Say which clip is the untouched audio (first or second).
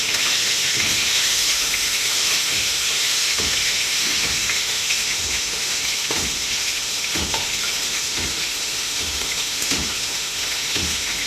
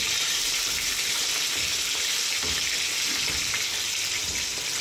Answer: second